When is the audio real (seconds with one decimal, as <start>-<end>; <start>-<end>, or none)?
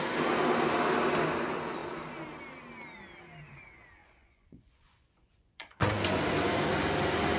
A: 0.0-4.0; 6.2-7.4